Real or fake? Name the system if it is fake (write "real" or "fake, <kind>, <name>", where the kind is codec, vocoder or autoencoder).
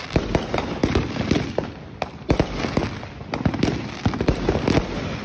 real